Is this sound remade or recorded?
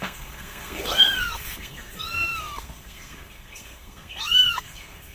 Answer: remade